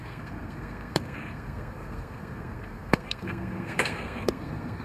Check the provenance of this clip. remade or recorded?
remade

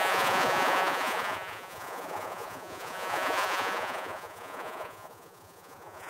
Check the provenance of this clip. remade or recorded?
remade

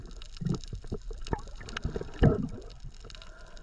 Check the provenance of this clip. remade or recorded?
recorded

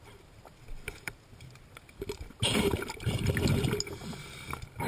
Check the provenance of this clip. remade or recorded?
recorded